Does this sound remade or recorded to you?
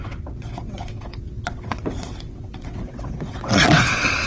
remade